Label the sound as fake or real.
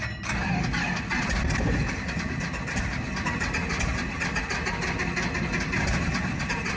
real